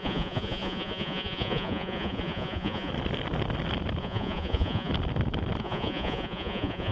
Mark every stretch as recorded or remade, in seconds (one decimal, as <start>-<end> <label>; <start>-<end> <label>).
0.0-2.9 remade; 2.9-4.0 recorded; 4.0-4.9 remade; 4.9-5.6 recorded; 5.6-6.9 remade